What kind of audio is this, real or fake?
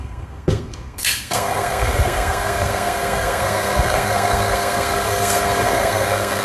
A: fake